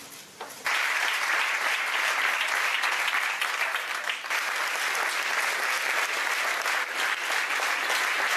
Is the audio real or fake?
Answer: real